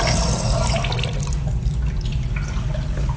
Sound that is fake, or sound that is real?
real